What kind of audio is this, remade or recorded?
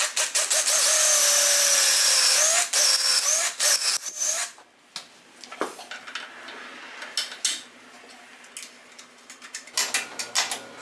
recorded